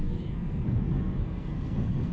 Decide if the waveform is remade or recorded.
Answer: remade